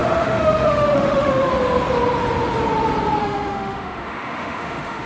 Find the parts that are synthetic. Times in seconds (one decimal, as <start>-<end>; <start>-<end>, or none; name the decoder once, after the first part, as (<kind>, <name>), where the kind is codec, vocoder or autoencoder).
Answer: 0.0-1.5 (autoencoder, DAC-VAE); 3.2-5.1